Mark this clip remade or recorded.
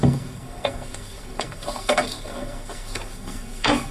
remade